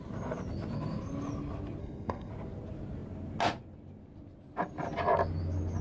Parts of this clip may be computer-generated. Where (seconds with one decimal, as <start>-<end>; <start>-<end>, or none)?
1.8-2.3